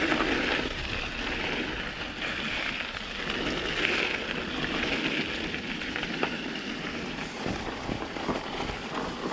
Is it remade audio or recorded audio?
recorded